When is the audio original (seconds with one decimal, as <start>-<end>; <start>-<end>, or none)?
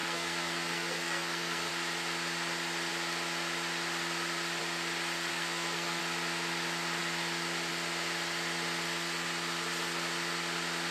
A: 1.7-5.3; 6.0-10.9